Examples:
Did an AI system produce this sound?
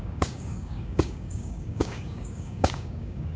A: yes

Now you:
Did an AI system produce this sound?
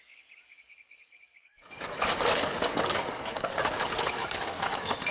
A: yes